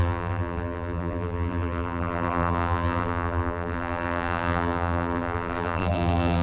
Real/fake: fake